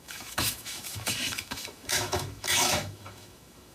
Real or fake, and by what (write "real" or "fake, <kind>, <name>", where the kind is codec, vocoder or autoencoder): fake, autoencoder, DAC-VAE